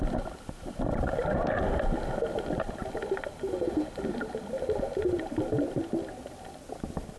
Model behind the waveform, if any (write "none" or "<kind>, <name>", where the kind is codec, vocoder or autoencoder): none